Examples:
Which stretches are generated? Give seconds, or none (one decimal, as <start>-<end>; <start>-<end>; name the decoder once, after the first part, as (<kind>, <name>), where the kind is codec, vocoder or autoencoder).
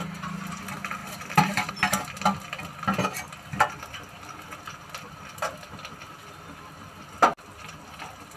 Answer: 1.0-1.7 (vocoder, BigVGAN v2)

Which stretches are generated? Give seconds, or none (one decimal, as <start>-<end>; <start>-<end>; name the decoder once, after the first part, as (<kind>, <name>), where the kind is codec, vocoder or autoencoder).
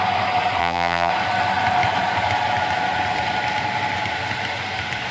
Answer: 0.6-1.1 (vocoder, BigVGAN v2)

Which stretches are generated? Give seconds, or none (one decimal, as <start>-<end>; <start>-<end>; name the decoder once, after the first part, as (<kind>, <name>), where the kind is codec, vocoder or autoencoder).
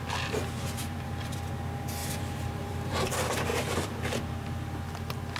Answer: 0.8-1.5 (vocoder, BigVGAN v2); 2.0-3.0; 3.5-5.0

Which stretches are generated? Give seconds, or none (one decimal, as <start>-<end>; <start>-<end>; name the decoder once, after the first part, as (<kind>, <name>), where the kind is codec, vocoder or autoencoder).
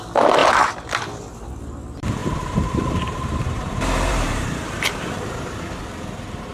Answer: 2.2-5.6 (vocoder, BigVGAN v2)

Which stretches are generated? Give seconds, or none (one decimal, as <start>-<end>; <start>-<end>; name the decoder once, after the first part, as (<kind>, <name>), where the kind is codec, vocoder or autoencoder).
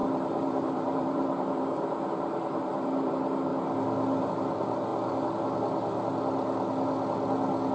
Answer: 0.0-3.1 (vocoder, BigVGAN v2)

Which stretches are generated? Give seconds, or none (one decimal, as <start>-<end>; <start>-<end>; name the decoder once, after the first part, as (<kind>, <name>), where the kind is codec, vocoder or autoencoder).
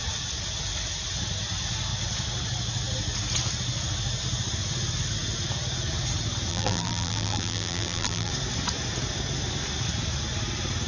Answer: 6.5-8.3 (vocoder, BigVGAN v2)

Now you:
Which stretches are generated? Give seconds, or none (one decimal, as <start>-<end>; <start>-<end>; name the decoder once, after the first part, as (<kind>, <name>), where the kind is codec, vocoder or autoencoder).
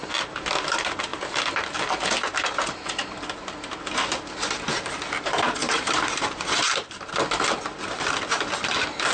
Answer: 5.6-7.1 (vocoder, BigVGAN v2)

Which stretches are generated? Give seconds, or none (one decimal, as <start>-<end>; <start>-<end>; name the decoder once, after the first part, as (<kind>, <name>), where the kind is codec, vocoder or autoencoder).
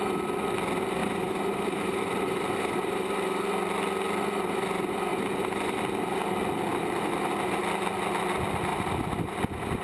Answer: 1.0-3.5 (vocoder, BigVGAN v2); 5.1-5.8; 8.7-9.4